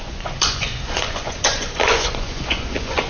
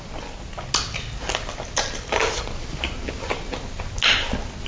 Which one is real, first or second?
second